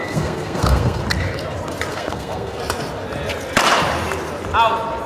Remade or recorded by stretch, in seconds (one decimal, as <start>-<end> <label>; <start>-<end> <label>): 0.0-1.0 remade; 1.0-1.9 recorded; 1.9-2.6 remade; 2.6-5.1 recorded